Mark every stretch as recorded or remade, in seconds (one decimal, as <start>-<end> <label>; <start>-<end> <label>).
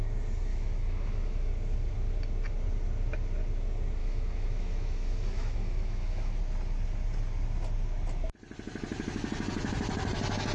0.0-0.5 recorded; 0.5-1.5 remade; 1.5-4.0 recorded; 4.0-6.4 remade; 6.4-10.5 recorded